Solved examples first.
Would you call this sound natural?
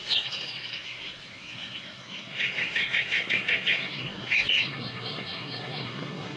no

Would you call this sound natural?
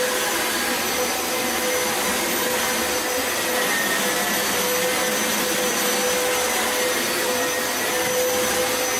yes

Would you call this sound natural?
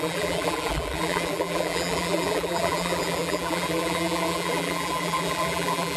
no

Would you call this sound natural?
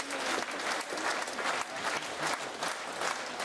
yes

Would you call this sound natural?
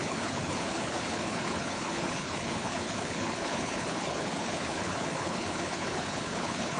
no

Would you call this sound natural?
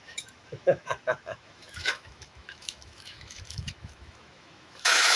no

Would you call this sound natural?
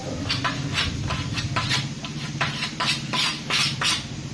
no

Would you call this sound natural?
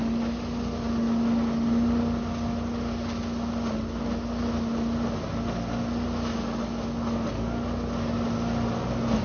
yes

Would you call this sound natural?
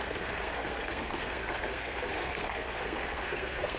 no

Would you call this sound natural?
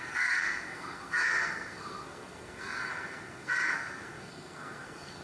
no